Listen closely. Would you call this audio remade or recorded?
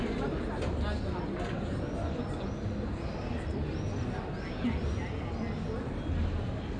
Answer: recorded